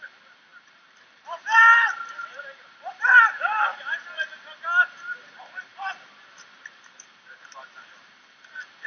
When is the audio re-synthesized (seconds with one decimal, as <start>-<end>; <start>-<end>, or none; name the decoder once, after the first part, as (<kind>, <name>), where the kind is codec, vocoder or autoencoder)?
0.5-2.9 (vocoder, BigVGAN v2); 5.7-8.1